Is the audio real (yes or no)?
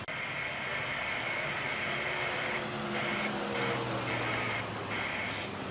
yes